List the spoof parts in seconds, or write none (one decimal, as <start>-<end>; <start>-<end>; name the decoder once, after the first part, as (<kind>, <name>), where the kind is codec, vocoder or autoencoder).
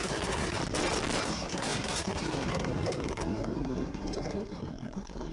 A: 0.0-0.6 (codec, SNAC); 1.2-5.3